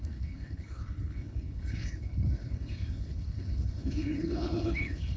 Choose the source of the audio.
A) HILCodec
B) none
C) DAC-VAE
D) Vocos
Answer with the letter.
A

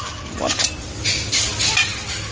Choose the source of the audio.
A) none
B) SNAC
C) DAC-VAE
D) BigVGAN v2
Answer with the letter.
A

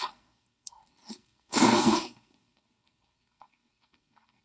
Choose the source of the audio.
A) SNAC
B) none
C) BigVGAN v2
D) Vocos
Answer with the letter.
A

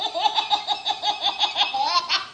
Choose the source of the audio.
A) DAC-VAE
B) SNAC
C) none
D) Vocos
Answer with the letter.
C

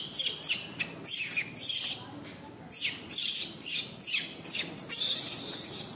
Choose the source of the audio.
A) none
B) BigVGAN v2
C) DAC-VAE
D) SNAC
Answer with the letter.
A